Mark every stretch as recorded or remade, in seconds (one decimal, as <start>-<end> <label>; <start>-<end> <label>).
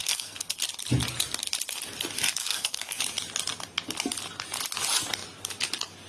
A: 0.0-0.6 remade; 0.6-2.4 recorded; 2.4-3.0 remade; 3.0-6.1 recorded